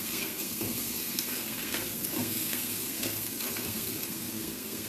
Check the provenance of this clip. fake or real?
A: fake